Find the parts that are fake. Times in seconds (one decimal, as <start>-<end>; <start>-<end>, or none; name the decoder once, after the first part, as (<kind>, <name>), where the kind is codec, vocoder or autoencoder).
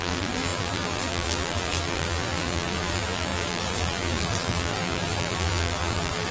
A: 0.0-6.3 (vocoder, BigVGAN v2)